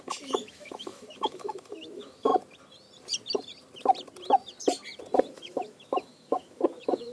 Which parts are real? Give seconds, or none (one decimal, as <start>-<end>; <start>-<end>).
2.3-5.3